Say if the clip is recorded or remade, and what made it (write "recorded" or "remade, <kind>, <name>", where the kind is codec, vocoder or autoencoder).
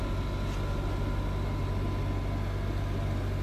recorded